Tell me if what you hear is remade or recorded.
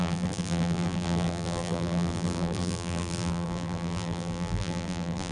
remade